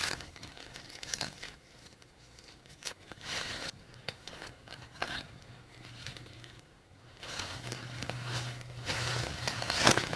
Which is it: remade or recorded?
remade